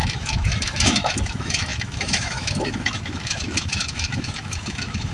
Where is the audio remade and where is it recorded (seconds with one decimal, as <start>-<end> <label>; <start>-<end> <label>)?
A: 0.0-5.1 remade